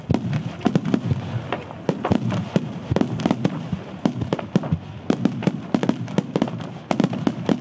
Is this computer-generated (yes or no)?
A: no